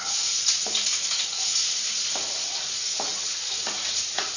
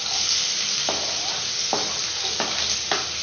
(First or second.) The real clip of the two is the second